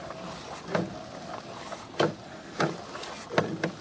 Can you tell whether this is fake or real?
real